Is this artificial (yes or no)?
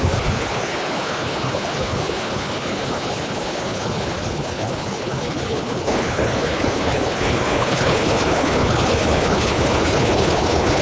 yes